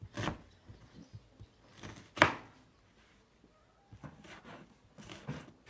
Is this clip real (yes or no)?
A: yes